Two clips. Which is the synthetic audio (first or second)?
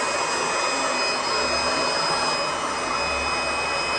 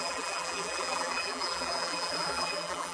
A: second